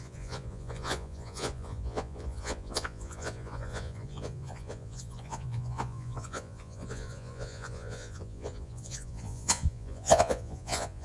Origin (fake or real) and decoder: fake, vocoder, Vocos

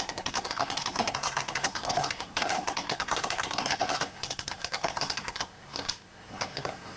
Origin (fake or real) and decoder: fake, codec, SNAC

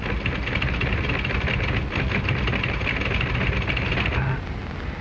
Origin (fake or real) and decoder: real